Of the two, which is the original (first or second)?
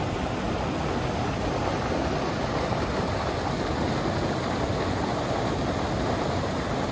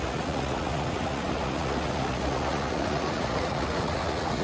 first